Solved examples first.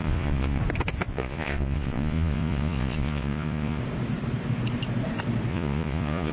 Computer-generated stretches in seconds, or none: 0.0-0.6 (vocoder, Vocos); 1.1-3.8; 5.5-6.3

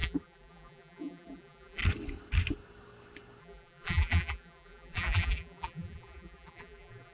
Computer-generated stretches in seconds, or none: 0.0-1.8 (vocoder, BigVGAN v2); 3.4-7.1

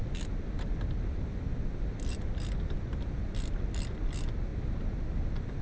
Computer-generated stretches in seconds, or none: none

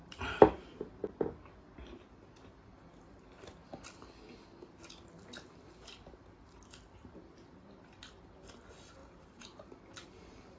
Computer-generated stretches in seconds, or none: 9.0-10.6 (vocoder, BigVGAN v2)

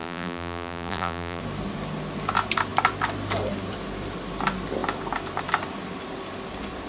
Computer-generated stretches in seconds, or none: 0.0-1.4 (vocoder, BigVGAN v2)

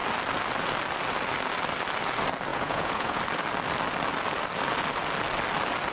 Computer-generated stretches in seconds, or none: 2.5-3.2 (vocoder, Vocos)